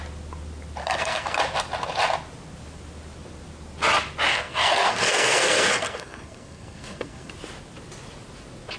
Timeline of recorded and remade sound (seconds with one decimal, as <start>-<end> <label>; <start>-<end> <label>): 0.0-0.8 recorded; 0.8-1.4 remade; 1.4-4.3 recorded; 4.3-7.3 remade; 7.3-8.8 recorded